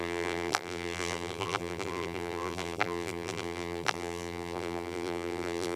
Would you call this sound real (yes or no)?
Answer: no